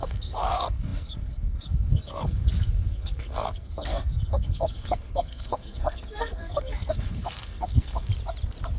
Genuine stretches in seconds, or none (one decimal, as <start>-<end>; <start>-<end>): 8.1-8.8